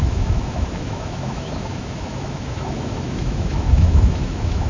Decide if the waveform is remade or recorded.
remade